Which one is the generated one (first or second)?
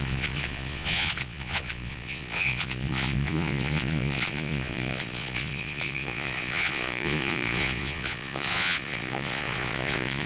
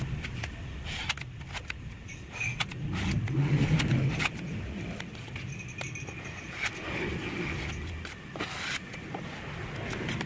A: first